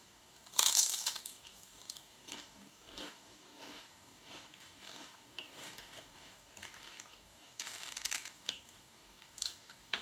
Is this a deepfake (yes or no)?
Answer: yes